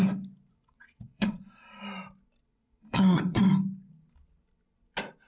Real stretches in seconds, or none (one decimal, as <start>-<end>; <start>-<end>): 0.0-0.5; 1.4-2.4; 3.4-5.3